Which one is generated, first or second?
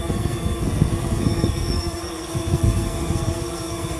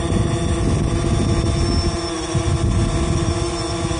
first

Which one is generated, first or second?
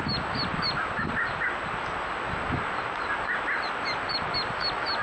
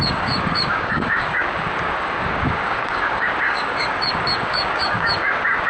second